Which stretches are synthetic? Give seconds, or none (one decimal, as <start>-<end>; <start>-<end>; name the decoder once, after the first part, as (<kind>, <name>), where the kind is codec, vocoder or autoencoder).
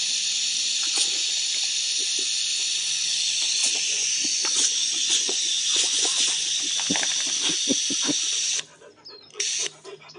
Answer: 2.6-3.1 (vocoder, Vocos); 3.6-6.6